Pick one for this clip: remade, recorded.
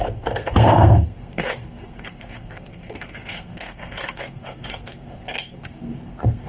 remade